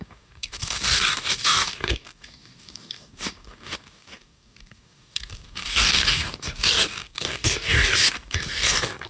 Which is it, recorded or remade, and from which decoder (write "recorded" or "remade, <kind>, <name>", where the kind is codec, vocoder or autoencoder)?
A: remade, codec, DAC